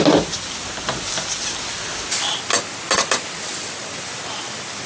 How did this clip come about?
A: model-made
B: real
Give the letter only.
B